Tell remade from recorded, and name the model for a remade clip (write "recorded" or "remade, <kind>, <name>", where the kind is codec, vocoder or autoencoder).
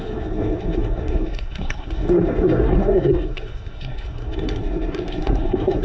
remade, codec, SNAC